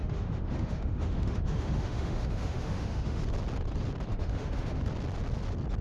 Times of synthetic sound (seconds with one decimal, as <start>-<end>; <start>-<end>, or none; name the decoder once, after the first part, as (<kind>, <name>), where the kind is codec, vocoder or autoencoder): 0.0-3.2 (autoencoder, DAC-VAE); 4.1-4.8